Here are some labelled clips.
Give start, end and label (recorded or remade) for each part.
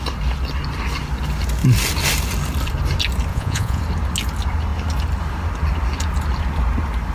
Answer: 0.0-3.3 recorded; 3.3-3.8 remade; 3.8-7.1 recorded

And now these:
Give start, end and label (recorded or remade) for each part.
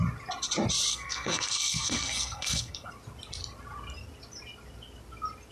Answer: 0.0-0.9 recorded; 0.9-2.9 remade; 2.9-5.5 recorded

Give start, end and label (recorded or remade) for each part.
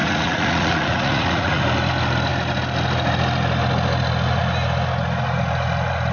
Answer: 0.0-1.6 remade; 1.6-6.1 recorded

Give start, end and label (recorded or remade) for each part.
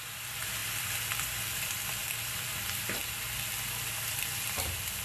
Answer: 0.0-3.0 remade; 3.0-4.1 recorded; 4.1-5.0 remade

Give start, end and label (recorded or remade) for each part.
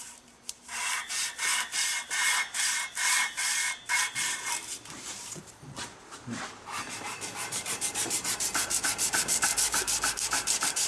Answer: 0.0-10.9 remade